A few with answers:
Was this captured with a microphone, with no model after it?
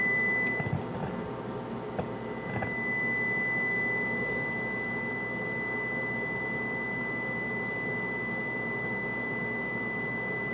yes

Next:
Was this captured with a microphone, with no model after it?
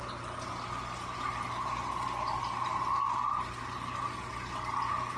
yes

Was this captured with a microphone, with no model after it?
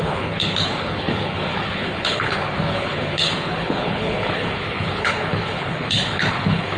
no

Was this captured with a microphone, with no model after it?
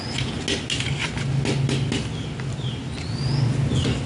yes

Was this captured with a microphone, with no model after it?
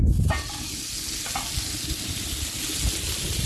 yes